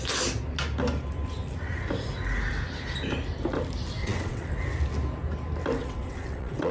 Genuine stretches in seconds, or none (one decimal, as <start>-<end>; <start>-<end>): 0.0-4.0; 4.5-5.8